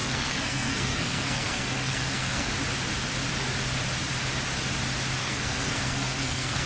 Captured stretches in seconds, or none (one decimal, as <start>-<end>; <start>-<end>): 2.5-5.2